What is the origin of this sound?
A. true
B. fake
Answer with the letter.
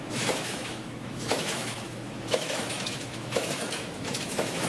B